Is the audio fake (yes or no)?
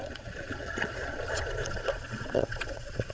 yes